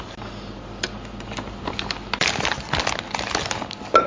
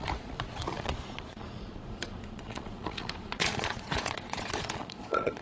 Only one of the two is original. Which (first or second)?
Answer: first